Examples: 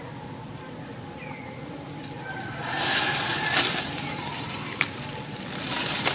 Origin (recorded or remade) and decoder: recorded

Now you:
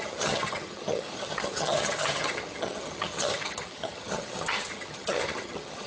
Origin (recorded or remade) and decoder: remade, vocoder, HiFi-GAN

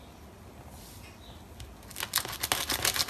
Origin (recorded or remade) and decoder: recorded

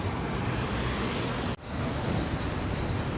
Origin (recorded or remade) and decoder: recorded